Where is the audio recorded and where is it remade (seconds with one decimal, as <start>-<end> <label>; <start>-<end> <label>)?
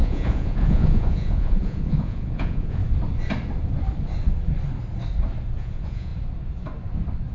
0.0-2.8 remade; 2.8-5.6 recorded; 5.6-6.1 remade; 6.1-7.3 recorded